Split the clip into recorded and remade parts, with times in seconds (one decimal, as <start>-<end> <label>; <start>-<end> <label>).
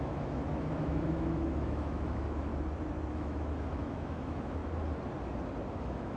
0.0-2.5 remade; 2.5-3.1 recorded; 3.1-4.6 remade; 4.6-5.7 recorded; 5.7-6.2 remade